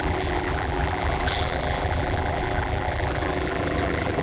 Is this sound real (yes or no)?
no